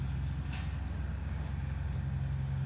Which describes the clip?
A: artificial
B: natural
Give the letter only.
B